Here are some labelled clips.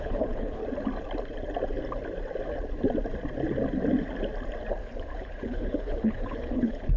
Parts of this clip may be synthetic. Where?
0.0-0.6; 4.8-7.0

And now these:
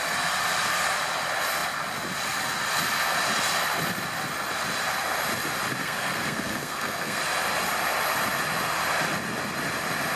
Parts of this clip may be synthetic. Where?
5.8-7.2

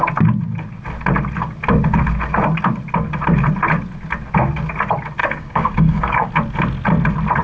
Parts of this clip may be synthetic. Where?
5.2-6.3

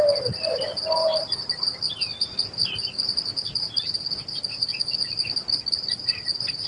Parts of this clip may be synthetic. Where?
none

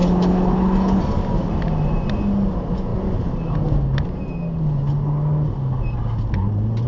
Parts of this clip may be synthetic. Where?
0.0-1.0